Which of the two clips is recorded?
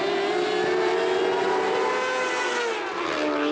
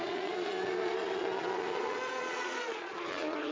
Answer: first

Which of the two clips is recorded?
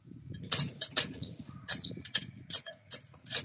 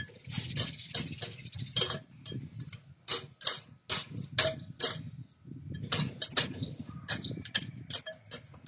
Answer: second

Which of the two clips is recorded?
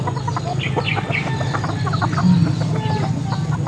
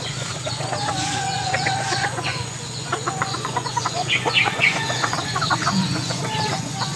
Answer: first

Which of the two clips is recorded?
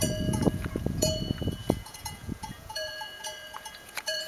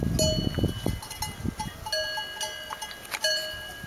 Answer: second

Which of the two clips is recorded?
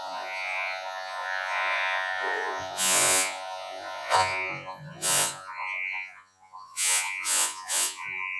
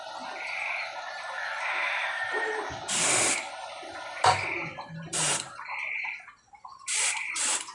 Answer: second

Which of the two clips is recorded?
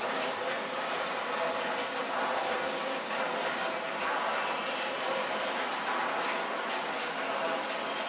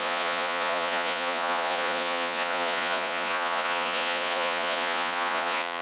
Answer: first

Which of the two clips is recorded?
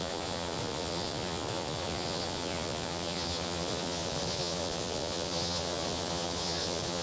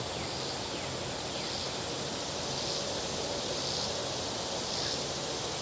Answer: second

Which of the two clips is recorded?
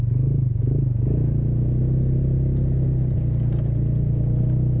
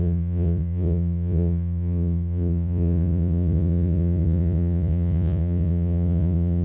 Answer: first